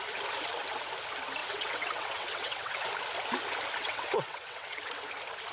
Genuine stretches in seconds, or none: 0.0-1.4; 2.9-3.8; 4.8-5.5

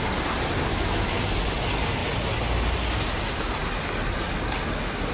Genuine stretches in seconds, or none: 0.0-0.7; 1.2-5.1